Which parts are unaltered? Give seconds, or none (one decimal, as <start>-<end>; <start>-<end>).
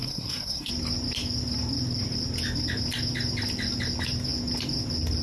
0.7-5.2